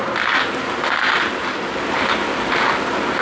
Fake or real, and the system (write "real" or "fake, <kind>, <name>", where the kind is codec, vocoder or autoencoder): real